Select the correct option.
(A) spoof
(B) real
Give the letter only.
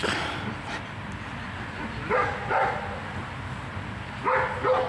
B